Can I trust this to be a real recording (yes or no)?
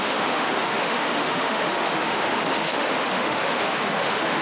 no